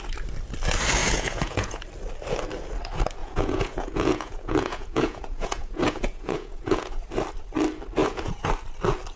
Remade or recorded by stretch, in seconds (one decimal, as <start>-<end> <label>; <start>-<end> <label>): 0.0-1.0 recorded; 1.0-1.8 remade; 1.8-3.2 recorded; 3.2-7.0 remade; 7.0-8.0 recorded; 8.0-8.5 remade; 8.5-9.2 recorded